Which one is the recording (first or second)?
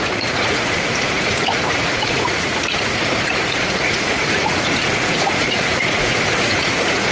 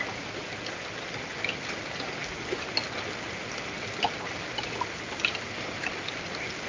second